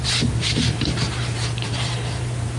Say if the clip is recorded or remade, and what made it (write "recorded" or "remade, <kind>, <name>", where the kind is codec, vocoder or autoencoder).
remade, vocoder, BigVGAN v2